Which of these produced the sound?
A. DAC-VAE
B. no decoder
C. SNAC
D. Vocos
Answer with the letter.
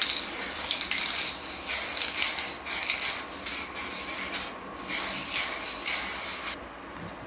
B